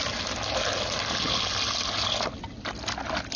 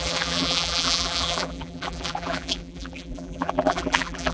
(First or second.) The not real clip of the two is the second